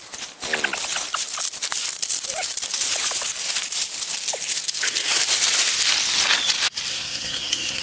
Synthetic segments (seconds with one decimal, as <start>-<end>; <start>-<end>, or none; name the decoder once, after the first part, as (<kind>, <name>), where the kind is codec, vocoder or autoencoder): 6.9-7.8 (codec, SNAC)